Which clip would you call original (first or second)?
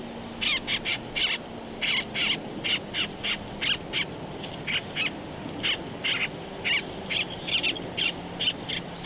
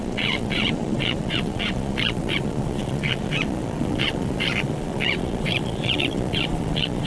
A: first